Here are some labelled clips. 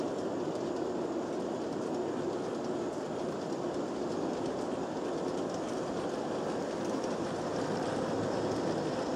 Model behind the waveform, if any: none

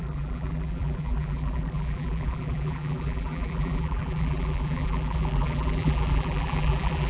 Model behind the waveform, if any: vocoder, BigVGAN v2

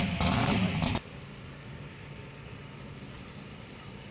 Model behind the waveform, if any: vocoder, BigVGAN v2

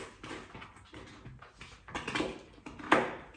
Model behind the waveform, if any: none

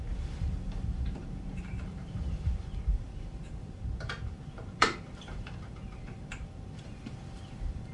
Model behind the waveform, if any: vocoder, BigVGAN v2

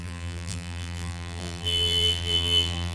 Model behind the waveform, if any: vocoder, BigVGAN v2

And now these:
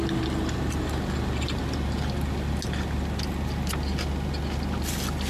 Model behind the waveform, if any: none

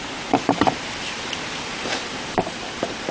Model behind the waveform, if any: vocoder, BigVGAN v2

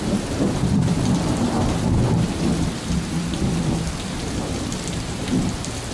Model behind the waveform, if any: vocoder, BigVGAN v2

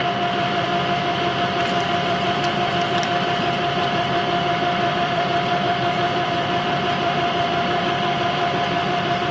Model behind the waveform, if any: vocoder, BigVGAN v2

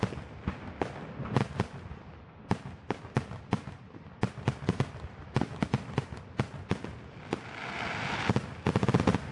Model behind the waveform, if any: none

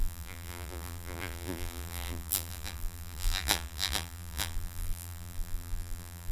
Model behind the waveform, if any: vocoder, BigVGAN v2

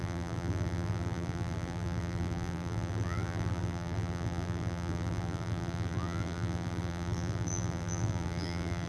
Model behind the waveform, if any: vocoder, BigVGAN v2